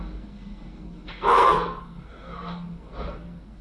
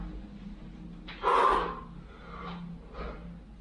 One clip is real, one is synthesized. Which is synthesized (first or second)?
first